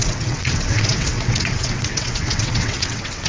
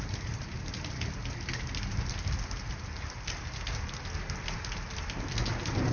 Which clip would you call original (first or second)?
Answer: second